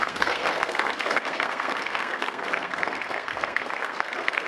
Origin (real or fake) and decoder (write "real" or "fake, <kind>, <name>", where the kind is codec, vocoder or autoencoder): fake, codec, SNAC